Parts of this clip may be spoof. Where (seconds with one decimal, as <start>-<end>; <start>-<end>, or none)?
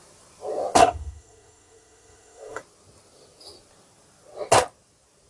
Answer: 0.8-2.6